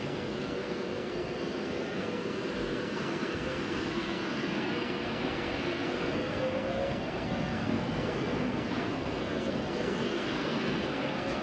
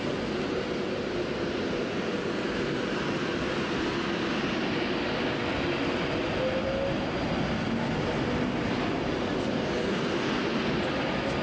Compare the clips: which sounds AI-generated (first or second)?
first